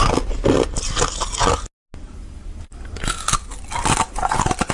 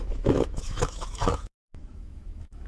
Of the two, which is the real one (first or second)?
first